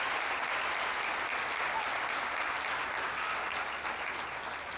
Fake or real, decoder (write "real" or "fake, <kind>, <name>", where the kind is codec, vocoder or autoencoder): real